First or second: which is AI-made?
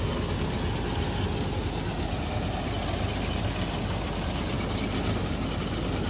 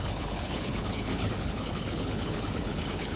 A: second